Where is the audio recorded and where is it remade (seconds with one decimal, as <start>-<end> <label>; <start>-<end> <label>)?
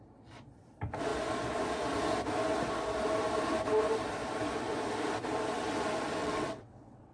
0.0-6.2 recorded; 6.2-7.1 remade